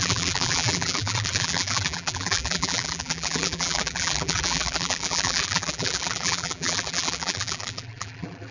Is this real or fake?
fake